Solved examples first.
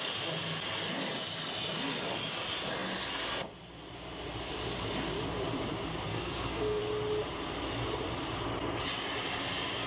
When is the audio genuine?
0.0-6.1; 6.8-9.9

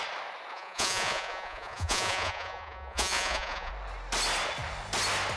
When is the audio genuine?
0.0-0.5; 3.7-5.4

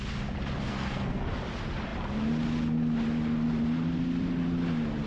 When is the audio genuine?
0.0-0.7; 1.2-5.1